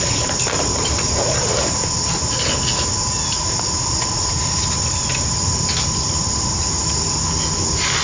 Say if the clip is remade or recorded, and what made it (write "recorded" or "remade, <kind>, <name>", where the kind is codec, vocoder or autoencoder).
recorded